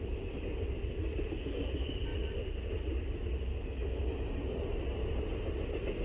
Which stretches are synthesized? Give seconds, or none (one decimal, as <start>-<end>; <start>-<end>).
none